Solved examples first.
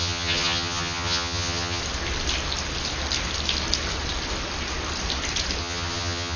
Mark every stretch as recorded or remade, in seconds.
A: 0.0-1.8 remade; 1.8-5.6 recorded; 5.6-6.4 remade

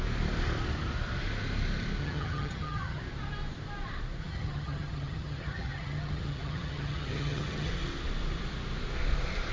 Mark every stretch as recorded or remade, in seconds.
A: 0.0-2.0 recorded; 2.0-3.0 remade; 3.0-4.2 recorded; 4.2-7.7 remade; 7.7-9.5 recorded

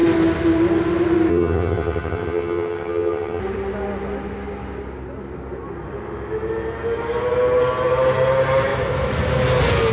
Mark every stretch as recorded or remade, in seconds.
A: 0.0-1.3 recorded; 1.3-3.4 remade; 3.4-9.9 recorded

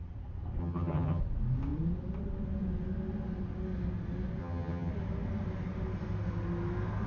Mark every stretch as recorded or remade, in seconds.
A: 0.0-0.6 recorded; 0.6-1.2 remade; 1.2-4.4 recorded; 4.4-4.9 remade; 4.9-7.1 recorded

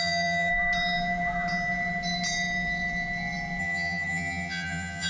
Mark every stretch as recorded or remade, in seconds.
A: 0.0-0.5 remade; 0.5-3.6 recorded; 3.6-5.1 remade

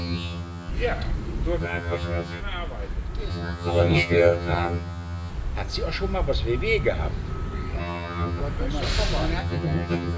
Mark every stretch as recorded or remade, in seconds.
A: 0.0-0.7 remade; 0.7-1.6 recorded; 1.6-2.4 remade; 2.4-3.3 recorded; 3.3-5.3 remade; 5.3-7.8 recorded; 7.8-8.4 remade; 8.4-9.4 recorded; 9.4-10.2 remade

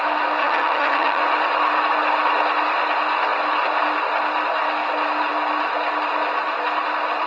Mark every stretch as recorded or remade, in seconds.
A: 0.0-0.4 recorded; 0.4-1.2 remade; 1.2-7.3 recorded